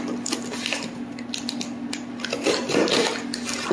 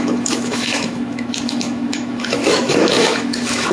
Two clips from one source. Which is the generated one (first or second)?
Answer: second